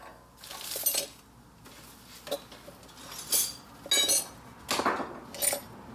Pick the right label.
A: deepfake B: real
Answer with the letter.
B